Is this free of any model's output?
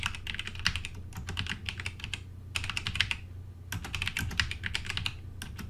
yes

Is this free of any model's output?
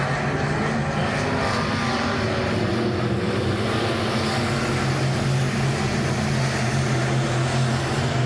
yes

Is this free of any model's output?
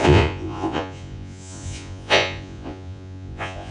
no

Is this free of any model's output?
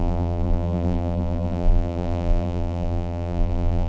no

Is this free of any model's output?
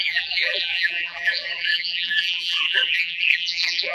no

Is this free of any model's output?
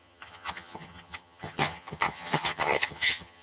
no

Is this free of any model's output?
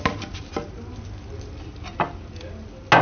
yes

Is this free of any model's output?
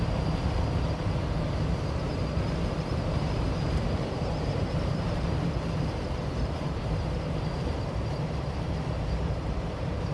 no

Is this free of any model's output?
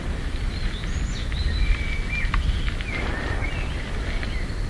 yes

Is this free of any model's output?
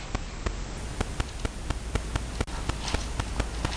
yes